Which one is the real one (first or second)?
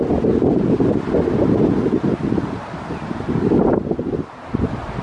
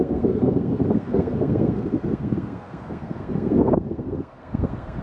first